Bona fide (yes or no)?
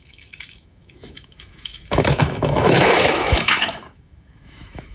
no